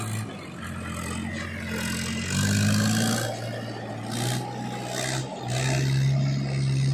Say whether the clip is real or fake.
real